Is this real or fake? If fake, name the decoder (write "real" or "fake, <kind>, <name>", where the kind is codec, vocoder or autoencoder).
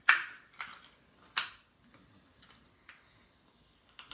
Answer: real